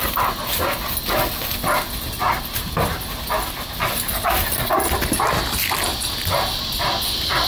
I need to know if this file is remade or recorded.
recorded